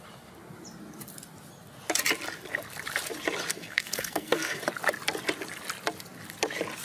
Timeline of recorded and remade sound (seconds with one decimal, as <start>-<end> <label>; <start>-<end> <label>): 0.0-3.5 recorded; 3.5-4.6 remade; 4.6-6.8 recorded